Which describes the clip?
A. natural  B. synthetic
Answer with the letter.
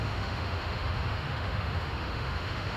B